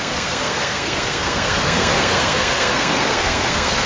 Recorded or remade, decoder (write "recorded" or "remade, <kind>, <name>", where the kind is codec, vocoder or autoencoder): remade, codec, SNAC